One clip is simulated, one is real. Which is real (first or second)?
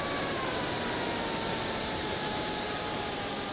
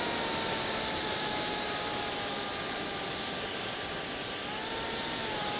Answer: second